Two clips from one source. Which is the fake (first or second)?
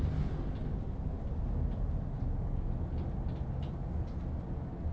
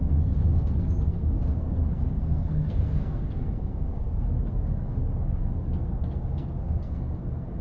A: second